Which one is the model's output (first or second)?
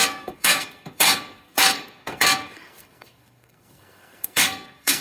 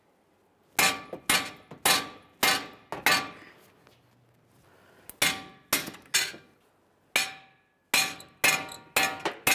first